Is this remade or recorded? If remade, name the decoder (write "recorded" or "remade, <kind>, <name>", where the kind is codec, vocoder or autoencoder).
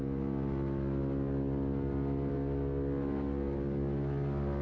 recorded